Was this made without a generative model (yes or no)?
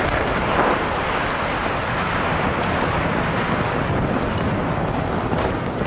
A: yes